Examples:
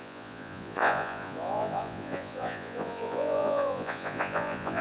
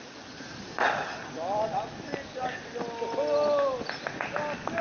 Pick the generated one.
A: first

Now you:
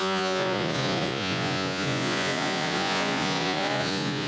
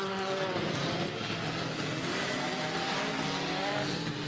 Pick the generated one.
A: first